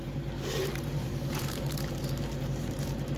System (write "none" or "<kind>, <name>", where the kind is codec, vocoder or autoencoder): vocoder, BigVGAN v2